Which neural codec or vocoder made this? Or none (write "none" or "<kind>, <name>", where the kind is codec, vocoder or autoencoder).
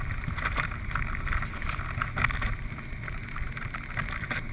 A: none